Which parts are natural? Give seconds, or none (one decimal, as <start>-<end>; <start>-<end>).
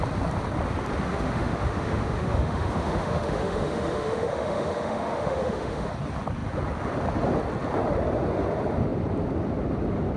0.0-1.1; 5.9-10.2